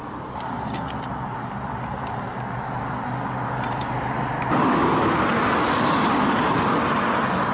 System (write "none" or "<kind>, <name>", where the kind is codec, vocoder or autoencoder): none